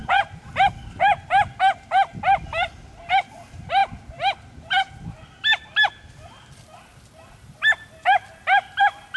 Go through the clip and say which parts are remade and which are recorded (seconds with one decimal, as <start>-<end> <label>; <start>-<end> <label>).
0.0-0.6 remade; 0.6-9.2 recorded